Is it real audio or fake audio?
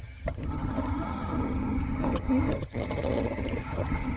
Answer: fake